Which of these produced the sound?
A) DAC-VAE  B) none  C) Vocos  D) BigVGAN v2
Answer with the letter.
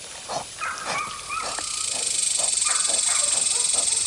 B